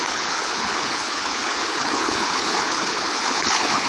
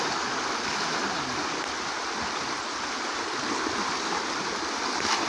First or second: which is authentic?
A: second